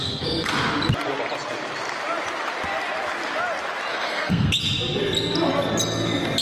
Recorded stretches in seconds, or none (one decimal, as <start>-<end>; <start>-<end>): 0.5-3.9; 4.5-6.4